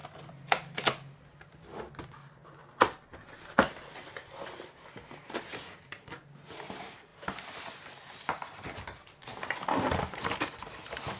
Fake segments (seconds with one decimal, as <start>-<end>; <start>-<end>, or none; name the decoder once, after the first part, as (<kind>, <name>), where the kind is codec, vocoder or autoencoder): none